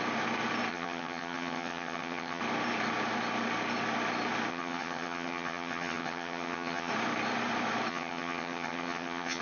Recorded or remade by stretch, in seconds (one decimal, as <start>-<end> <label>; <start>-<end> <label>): 0.0-0.7 recorded; 0.7-2.4 remade; 2.4-4.5 recorded; 4.5-6.9 remade; 6.9-7.9 recorded; 7.9-9.4 remade